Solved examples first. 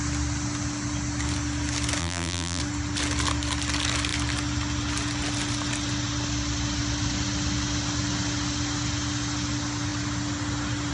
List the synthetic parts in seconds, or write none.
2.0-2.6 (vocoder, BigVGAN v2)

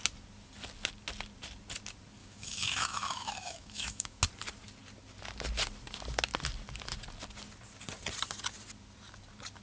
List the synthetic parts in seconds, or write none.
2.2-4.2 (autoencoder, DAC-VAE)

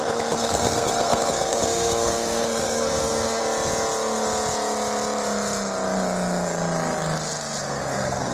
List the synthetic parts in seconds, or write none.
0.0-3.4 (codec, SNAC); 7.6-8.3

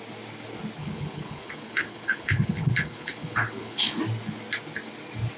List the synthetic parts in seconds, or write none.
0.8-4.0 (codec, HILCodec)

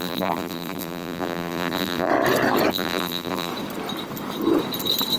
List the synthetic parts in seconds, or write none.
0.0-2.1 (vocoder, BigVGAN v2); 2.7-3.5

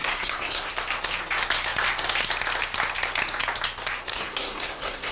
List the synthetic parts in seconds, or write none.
0.0-0.7 (codec, SNAC); 4.1-5.1

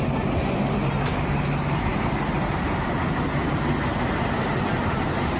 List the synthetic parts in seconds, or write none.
none